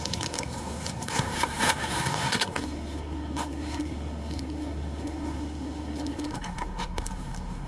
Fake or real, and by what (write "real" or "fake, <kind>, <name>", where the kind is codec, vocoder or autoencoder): fake, codec, SNAC